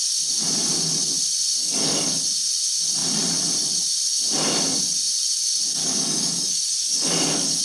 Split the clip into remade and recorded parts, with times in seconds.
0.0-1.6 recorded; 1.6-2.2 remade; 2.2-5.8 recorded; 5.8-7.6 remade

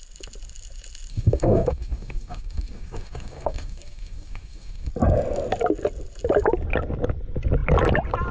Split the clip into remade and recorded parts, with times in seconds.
0.0-1.1 recorded; 1.1-4.9 remade; 4.9-8.3 recorded

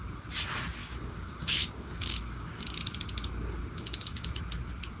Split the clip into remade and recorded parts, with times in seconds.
0.0-0.8 recorded; 0.8-2.6 remade; 2.6-3.6 recorded; 3.6-4.4 remade; 4.4-5.0 recorded